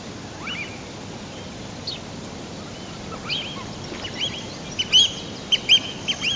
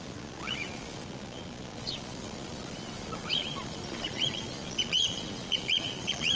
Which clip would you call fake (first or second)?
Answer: second